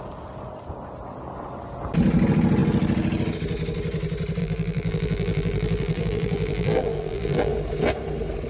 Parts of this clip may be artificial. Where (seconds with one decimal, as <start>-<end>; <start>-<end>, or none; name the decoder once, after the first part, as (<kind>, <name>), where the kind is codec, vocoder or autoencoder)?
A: 4.4-7.5 (vocoder, BigVGAN v2)